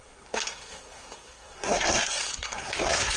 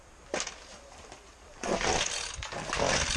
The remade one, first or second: first